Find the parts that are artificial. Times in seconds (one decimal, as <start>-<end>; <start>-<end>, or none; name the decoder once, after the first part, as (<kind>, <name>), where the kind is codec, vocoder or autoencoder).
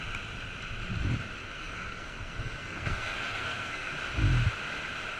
1.4-3.9 (codec, SNAC)